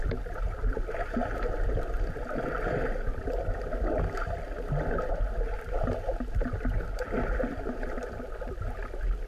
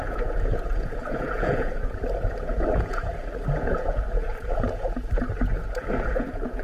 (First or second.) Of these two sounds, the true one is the first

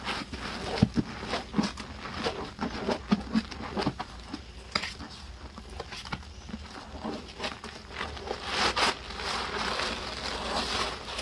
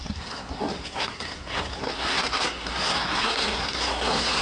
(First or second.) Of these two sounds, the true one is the first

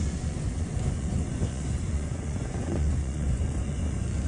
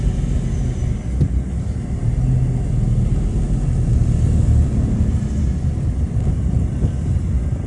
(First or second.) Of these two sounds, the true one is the second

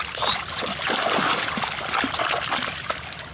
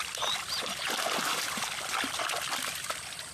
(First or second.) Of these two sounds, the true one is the first